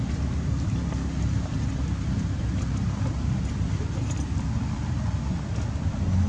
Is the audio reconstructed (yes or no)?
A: no